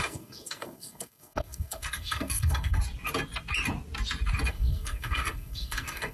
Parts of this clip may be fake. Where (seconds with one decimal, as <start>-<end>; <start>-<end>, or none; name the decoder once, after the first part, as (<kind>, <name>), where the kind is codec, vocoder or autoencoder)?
0.0-2.8 (codec, SNAC); 4.5-6.1